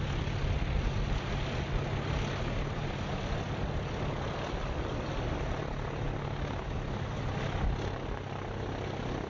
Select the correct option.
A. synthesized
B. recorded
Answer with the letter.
B